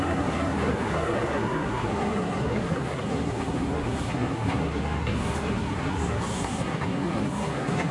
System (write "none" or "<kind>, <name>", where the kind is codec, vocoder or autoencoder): codec, SNAC